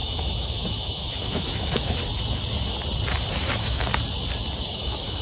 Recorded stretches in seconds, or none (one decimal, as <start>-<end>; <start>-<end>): 2.0-3.5; 3.9-4.6